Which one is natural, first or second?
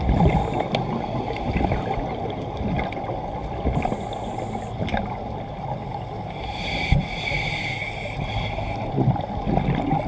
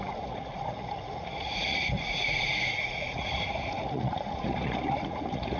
first